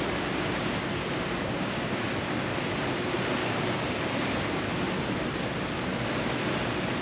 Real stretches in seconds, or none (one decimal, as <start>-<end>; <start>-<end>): 0.0-1.4; 2.0-3.4; 4.0-7.0

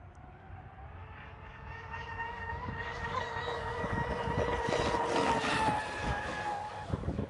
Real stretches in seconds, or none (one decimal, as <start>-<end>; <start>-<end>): 0.0-1.0; 4.3-6.0